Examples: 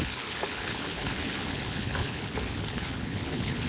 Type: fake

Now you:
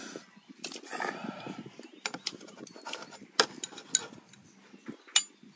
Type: real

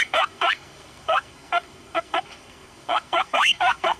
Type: fake